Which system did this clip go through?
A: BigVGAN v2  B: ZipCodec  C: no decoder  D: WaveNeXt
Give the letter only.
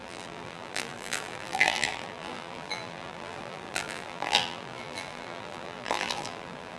A